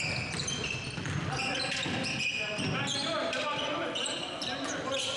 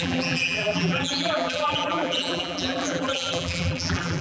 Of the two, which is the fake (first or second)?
second